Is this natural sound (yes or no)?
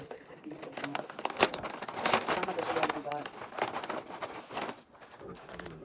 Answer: yes